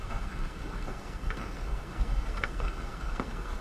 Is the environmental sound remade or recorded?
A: remade